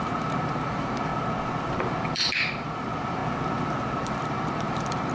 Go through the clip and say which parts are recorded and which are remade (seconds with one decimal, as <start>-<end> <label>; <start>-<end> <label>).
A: 0.0-1.1 remade; 1.1-1.7 recorded; 1.7-3.2 remade; 3.2-4.0 recorded; 4.0-5.1 remade